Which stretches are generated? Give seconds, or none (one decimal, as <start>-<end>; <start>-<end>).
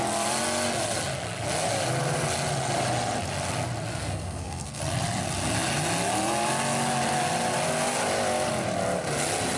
3.9-4.8